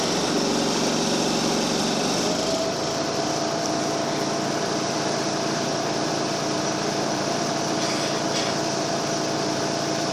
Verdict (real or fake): fake